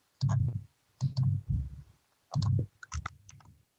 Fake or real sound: fake